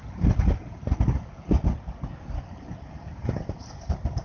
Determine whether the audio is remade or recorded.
recorded